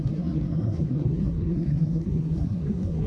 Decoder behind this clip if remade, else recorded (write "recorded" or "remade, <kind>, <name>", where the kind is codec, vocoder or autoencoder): remade, codec, SNAC